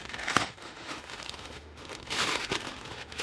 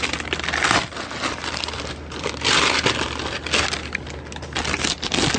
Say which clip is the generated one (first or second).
first